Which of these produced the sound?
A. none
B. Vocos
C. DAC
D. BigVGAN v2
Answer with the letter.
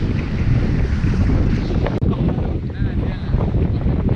A